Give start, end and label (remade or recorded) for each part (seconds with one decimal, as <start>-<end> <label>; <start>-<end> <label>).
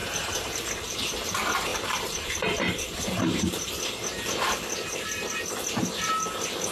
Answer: 0.0-0.6 remade; 0.6-1.7 recorded; 1.7-3.7 remade; 3.7-6.7 recorded